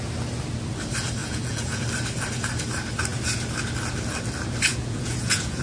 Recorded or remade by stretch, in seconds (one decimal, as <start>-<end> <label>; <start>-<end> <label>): 0.0-1.2 recorded; 1.2-1.8 remade; 1.8-4.7 recorded; 4.7-5.6 remade